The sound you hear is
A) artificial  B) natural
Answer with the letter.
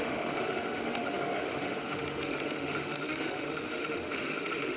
A